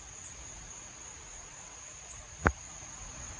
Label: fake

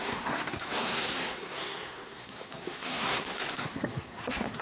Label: fake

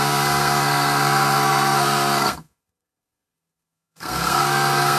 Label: fake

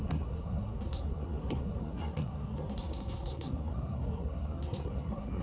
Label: fake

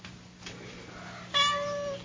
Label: real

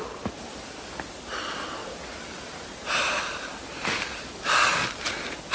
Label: real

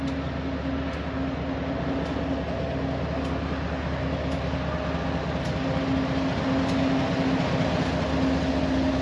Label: real